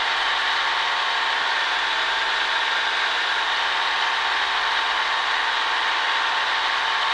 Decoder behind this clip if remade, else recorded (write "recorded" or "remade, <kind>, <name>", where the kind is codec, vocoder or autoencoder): recorded